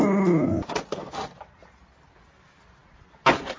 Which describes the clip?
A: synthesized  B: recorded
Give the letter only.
B